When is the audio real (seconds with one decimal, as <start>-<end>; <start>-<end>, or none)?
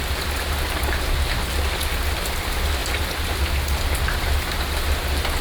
0.0-5.4